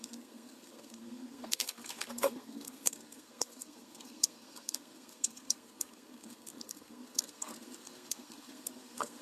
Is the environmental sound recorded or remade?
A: remade